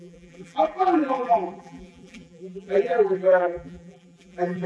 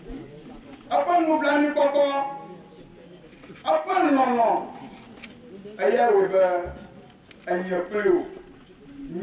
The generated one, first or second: first